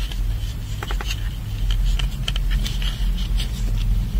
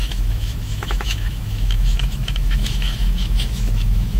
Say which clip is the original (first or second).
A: first